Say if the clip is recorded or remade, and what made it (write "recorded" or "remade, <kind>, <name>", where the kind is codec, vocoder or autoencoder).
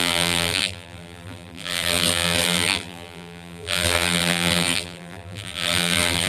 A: remade, vocoder, BigVGAN v2